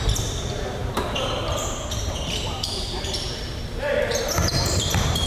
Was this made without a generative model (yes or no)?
no